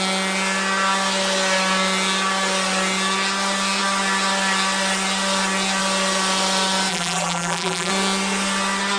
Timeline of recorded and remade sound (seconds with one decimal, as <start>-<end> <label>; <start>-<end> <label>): 0.0-6.9 recorded; 6.9-7.9 remade; 7.9-9.0 recorded